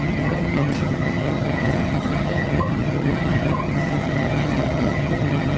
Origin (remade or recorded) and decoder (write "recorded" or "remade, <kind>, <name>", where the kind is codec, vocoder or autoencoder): remade, vocoder, HiFi-GAN